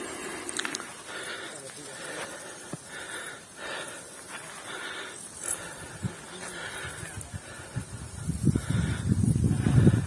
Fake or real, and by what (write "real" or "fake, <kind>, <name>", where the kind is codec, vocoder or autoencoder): real